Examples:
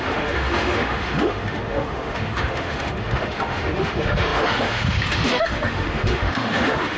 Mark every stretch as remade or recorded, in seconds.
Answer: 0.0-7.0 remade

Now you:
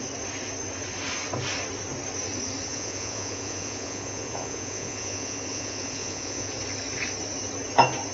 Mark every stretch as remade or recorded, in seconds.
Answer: 0.0-2.7 recorded; 2.7-6.5 remade; 6.5-8.1 recorded

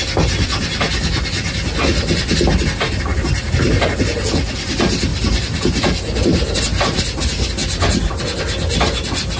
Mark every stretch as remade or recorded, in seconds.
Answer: 0.0-3.1 recorded; 3.1-4.0 remade; 4.0-5.1 recorded; 5.1-6.6 remade; 6.6-7.6 recorded; 7.6-8.2 remade; 8.2-9.4 recorded

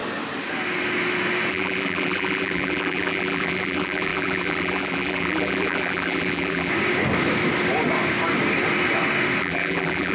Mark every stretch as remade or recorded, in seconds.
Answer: 0.0-1.5 recorded; 1.5-6.7 remade; 6.7-9.4 recorded; 9.4-10.1 remade

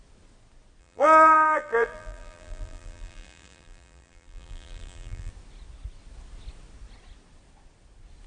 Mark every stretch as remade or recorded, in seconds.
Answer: 0.0-0.8 recorded; 0.8-5.3 remade; 5.3-8.3 recorded

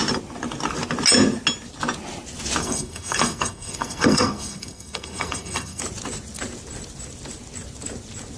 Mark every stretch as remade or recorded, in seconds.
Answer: 0.0-2.6 recorded; 2.6-5.8 remade; 5.8-8.4 recorded

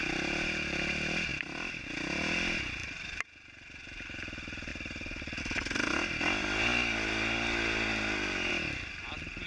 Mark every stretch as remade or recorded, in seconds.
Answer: 0.0-1.3 recorded; 1.3-1.8 remade; 1.8-2.8 recorded; 2.8-3.3 remade; 3.3-9.5 recorded